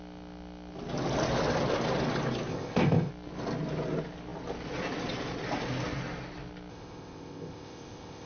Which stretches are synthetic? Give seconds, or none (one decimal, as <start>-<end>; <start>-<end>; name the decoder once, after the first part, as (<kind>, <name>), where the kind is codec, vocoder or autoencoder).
2.5-3.1 (codec, ZipCodec); 6.7-8.3